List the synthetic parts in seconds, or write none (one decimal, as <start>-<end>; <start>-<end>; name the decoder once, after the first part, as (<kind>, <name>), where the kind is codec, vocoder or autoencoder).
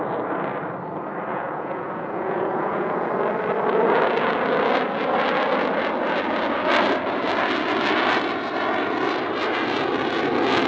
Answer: 1.3-3.1 (vocoder, Vocos)